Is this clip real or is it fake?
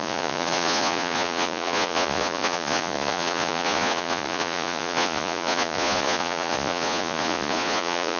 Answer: fake